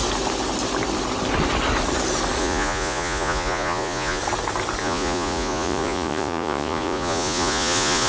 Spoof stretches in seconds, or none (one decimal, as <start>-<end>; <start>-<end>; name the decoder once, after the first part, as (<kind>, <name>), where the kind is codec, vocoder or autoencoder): 2.4-4.2 (vocoder, Vocos); 4.8-8.1